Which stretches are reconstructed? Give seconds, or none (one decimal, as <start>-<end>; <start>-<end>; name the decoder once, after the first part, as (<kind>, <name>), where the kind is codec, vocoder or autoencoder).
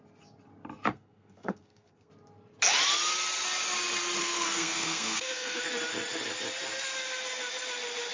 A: 0.9-2.1 (codec, SNAC); 4.2-5.6